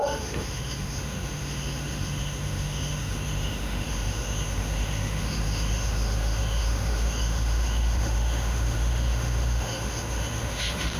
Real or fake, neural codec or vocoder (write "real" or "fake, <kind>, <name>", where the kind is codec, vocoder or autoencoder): fake, autoencoder, DAC-VAE